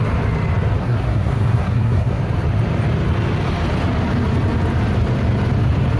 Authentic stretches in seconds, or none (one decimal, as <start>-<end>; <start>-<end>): 0.0-0.8; 2.2-6.0